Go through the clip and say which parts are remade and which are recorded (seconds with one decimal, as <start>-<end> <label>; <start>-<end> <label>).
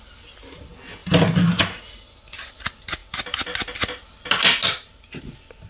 0.0-5.7 recorded